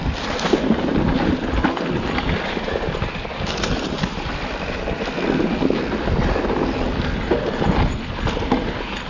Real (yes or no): yes